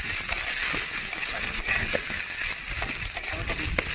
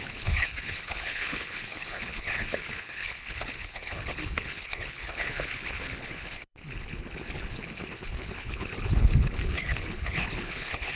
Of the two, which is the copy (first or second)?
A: second